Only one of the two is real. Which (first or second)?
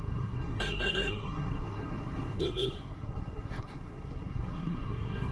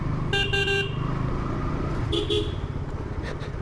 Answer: second